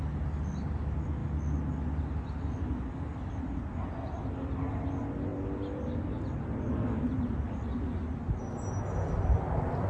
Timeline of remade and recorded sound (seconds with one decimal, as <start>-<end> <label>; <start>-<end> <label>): 0.0-9.9 recorded